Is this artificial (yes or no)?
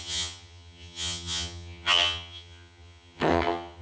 yes